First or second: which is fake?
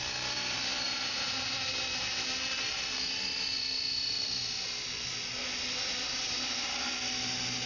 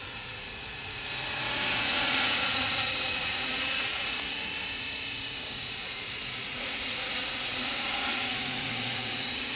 second